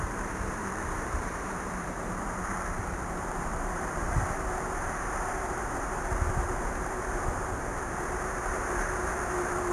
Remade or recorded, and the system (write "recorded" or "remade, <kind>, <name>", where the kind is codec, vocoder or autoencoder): remade, vocoder, BigVGAN v2